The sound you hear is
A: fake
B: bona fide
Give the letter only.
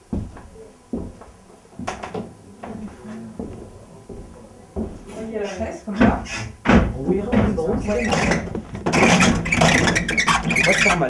B